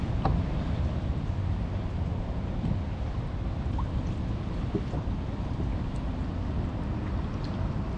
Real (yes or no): yes